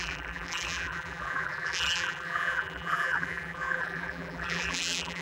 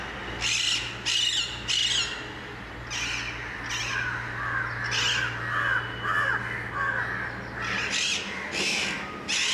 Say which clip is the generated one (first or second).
first